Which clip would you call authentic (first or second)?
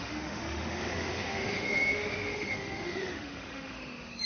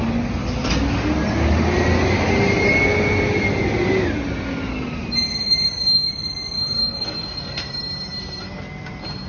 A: second